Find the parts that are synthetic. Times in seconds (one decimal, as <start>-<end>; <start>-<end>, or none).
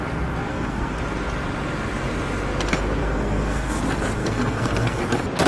0.5-1.0; 3.0-3.8; 4.2-5.0